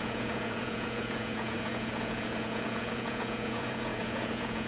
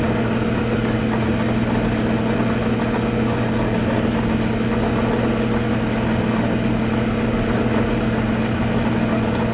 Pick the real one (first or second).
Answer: second